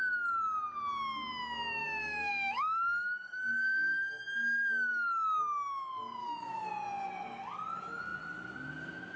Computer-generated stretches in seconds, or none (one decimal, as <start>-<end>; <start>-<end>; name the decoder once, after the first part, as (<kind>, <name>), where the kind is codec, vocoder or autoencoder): 1.8-4.2 (codec, DAC); 4.9-5.4; 6.2-6.7